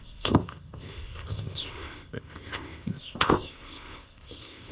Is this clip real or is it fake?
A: fake